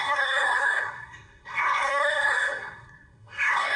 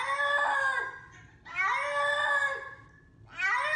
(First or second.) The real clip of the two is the second